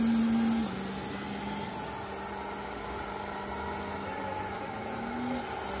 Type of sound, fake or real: real